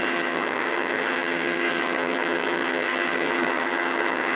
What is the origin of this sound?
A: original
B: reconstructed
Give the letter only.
B